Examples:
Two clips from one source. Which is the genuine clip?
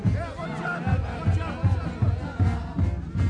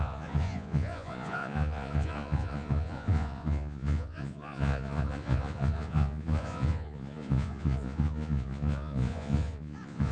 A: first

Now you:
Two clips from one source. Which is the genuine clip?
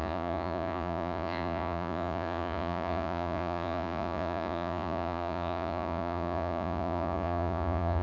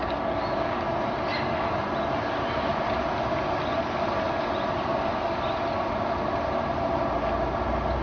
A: second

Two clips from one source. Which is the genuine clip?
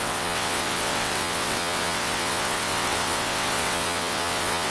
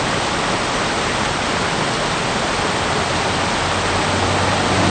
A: second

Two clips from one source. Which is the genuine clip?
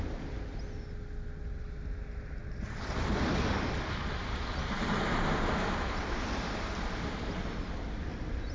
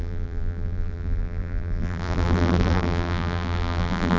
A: first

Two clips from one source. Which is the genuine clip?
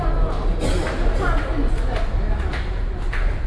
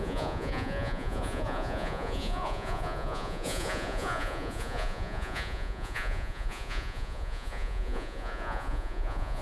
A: first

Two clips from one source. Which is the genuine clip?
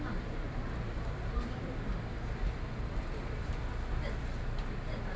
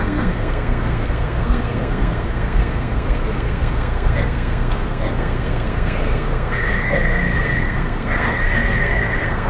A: first